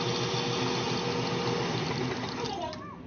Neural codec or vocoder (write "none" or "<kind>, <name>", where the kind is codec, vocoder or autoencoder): none